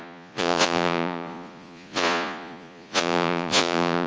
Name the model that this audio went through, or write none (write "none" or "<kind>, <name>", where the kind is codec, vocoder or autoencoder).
vocoder, Vocos